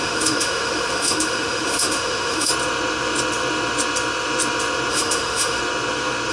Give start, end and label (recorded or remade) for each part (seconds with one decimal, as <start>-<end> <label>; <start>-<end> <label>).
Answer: 0.0-2.5 remade; 2.5-4.9 recorded; 4.9-5.6 remade; 5.6-6.3 recorded